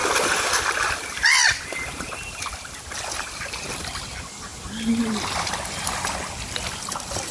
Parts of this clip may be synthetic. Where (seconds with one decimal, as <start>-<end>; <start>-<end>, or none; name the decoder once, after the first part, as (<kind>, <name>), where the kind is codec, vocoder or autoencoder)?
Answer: none

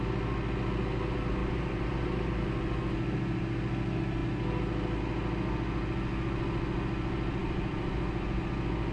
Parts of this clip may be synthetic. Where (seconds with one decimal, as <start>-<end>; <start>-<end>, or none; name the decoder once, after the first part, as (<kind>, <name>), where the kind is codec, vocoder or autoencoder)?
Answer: 1.4-2.4 (vocoder, BigVGAN v2); 7.4-8.5

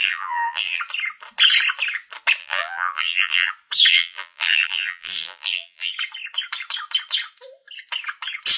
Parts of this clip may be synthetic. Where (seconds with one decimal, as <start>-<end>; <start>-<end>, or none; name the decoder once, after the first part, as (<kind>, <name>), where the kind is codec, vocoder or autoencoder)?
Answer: 0.0-0.8 (vocoder, BigVGAN v2); 2.4-3.5; 3.9-5.9